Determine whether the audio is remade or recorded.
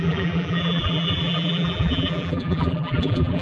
remade